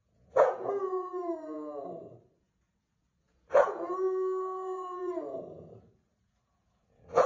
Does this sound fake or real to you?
fake